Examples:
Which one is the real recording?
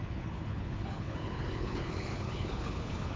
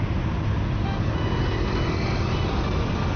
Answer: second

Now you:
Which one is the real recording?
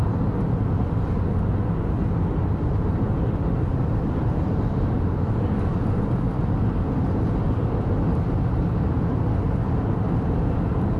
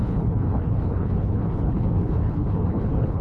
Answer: first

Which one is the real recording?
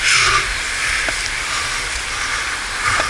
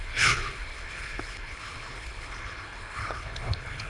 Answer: first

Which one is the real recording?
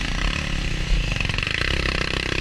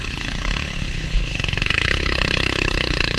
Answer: first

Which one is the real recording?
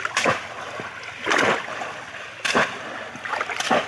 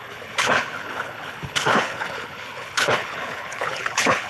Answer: first